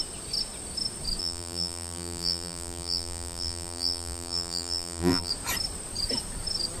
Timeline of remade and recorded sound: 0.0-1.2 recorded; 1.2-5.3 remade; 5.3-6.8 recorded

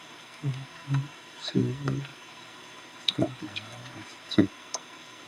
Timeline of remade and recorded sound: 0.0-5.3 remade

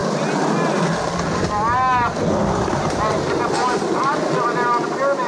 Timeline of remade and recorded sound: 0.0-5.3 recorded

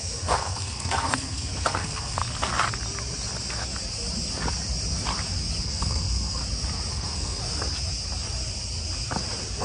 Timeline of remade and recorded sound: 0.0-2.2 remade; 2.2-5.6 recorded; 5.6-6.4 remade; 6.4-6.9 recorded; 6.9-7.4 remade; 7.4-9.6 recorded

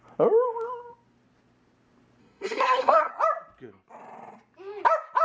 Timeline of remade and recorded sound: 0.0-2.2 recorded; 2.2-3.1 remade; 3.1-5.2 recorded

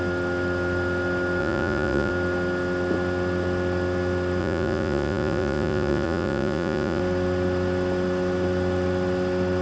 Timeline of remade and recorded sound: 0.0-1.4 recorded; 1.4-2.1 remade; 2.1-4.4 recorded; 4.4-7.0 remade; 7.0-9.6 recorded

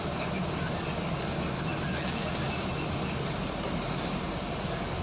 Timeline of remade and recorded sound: 0.0-5.0 recorded